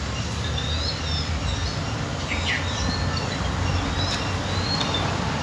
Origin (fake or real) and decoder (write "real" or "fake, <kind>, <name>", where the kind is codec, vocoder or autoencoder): real